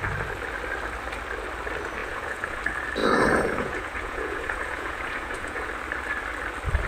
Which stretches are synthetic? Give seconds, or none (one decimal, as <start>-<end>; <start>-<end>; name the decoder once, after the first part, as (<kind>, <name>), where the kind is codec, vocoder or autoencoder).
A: 2.0-2.6 (vocoder, Vocos); 3.0-5.7